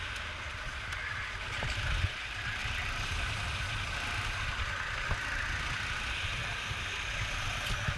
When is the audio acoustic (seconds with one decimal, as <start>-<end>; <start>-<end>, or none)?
0.0-0.5; 1.0-8.0